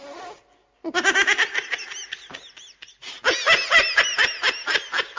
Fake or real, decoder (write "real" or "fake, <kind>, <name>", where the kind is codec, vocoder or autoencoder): real